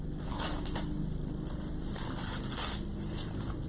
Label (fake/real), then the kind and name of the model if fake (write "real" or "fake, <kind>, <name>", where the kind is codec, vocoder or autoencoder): real